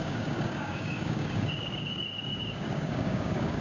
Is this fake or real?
fake